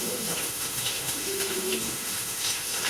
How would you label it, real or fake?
fake